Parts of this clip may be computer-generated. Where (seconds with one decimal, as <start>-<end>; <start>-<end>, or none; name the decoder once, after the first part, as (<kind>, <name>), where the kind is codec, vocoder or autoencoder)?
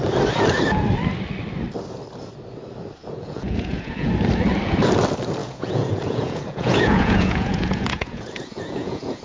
3.0-4.1 (vocoder, Vocos); 5.4-9.2